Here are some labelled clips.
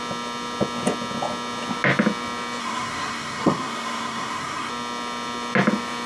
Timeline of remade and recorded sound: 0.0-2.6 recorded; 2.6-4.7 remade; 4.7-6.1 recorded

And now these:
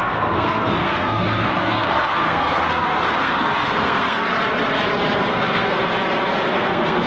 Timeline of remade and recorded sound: 0.0-4.3 remade; 4.3-5.3 recorded; 5.3-5.8 remade; 5.8-6.5 recorded; 6.5-7.1 remade

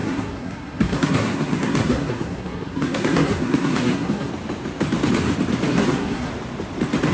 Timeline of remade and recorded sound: 0.0-4.3 remade; 4.3-5.7 recorded; 5.7-6.3 remade; 6.3-7.1 recorded

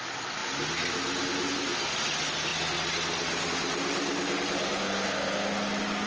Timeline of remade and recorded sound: 0.0-4.8 recorded; 4.8-5.5 remade; 5.5-6.1 recorded

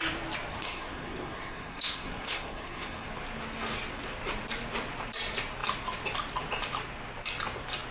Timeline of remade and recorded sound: 0.0-0.5 recorded; 0.5-3.1 remade; 3.1-7.9 recorded

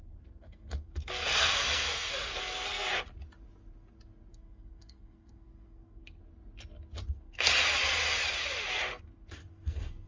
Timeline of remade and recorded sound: 0.0-2.9 remade; 2.9-4.3 recorded; 4.3-6.2 remade; 6.2-7.1 recorded; 7.1-7.5 remade; 7.5-9.0 recorded; 9.0-10.1 remade

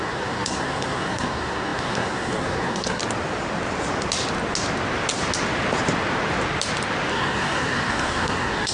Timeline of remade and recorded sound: 0.0-3.0 remade; 3.0-7.1 recorded; 7.1-8.7 remade